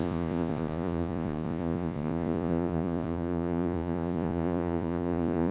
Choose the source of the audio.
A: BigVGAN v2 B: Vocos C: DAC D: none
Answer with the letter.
B